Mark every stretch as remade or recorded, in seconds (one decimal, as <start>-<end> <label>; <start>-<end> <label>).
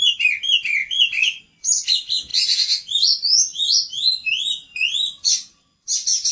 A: 0.0-6.3 recorded